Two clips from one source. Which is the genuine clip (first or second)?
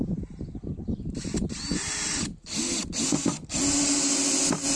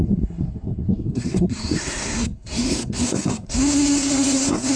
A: first